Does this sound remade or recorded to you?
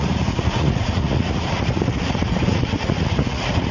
remade